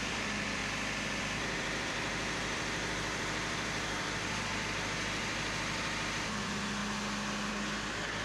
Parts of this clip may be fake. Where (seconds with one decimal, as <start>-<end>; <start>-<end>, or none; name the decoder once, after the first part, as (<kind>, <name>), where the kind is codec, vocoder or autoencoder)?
0.0-0.6 (vocoder, BigVGAN v2); 1.2-6.8; 7.5-8.2